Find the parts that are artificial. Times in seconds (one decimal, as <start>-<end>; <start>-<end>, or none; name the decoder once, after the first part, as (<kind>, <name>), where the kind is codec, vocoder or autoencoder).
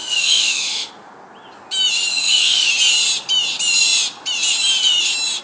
0.0-0.9 (autoencoder, DAC-VAE); 2.1-2.7